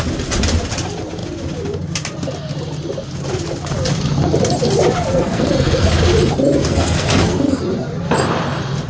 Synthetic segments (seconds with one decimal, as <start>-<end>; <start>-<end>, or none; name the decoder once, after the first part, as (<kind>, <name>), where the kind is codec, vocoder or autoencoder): 5.1-5.9 (codec, SNAC); 6.6-7.6